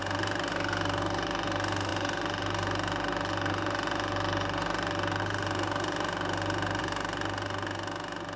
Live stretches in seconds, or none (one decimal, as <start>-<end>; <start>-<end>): 0.0-8.4